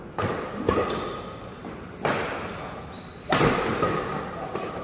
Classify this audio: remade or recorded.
recorded